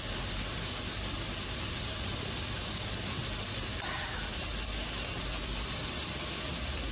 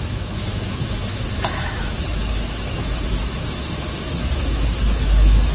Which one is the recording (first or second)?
first